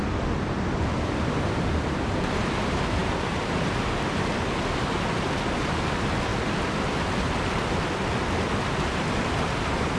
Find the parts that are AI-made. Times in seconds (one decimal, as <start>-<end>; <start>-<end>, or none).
none